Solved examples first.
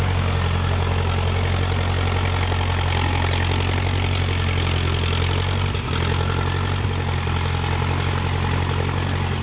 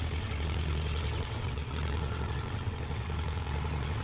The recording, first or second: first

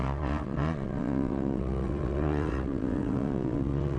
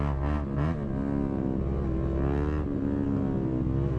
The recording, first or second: second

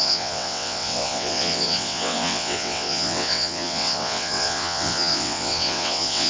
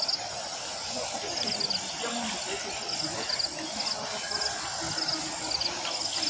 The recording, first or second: second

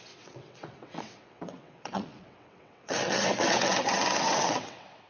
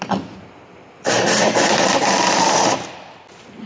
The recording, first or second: second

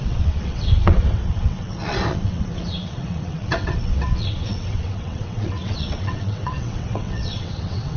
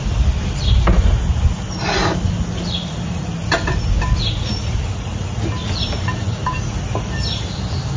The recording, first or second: second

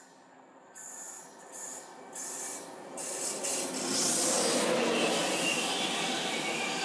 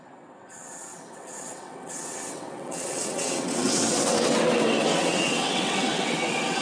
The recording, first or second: first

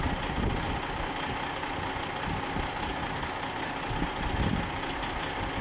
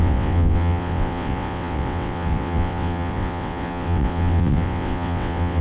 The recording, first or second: first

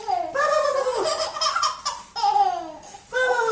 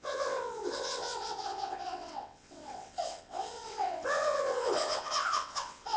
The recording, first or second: first